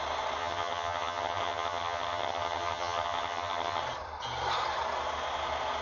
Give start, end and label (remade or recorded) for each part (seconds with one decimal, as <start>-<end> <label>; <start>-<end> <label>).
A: 0.0-0.4 recorded; 0.4-3.8 remade; 3.8-5.8 recorded